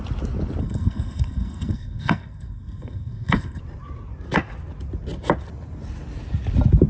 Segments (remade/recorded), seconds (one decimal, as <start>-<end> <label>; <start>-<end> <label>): 0.0-0.6 recorded; 0.6-3.6 remade; 3.6-6.9 recorded